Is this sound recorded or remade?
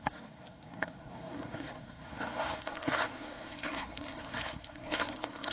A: remade